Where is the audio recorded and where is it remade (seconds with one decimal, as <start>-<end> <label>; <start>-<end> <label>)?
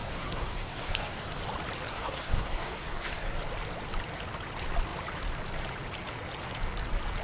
0.0-1.4 remade; 1.4-1.9 recorded; 1.9-3.4 remade; 3.4-7.2 recorded